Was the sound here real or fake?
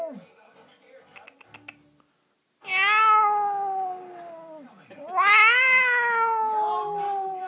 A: real